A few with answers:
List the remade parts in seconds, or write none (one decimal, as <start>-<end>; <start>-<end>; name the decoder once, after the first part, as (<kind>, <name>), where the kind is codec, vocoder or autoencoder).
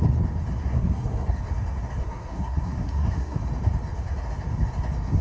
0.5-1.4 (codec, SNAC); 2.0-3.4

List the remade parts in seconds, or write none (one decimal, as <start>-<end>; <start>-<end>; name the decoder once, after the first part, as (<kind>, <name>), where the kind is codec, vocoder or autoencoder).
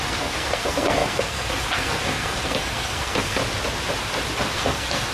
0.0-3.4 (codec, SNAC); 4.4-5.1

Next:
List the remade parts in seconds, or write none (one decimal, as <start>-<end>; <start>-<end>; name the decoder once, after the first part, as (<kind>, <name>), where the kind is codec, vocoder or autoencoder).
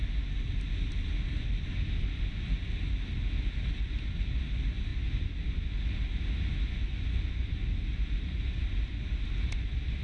none